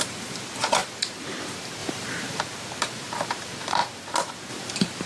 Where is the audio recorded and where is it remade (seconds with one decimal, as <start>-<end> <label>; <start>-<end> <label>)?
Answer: 0.0-5.1 remade